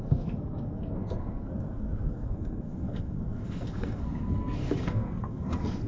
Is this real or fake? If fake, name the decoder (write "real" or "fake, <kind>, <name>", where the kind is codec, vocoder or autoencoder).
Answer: fake, codec, SNAC